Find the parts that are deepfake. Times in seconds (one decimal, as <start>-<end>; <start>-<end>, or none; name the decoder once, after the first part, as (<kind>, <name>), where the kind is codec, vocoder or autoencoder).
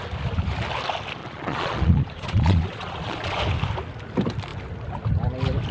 1.2-3.4 (vocoder, Vocos)